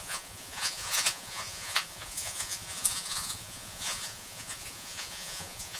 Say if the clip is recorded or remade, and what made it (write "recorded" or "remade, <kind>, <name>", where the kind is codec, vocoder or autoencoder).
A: remade, vocoder, Vocos